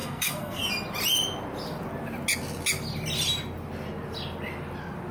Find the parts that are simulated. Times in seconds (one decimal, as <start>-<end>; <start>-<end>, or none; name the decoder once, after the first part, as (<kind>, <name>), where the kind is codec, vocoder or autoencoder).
0.0-0.7 (codec, SNAC)

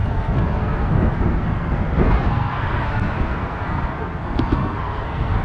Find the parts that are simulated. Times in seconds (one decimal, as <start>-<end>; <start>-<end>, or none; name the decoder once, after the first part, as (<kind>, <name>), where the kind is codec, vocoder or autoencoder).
0.0-5.4 (codec, SNAC)